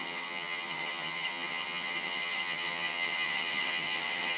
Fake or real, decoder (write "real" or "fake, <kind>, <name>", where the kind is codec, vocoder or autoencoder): fake, vocoder, HiFi-GAN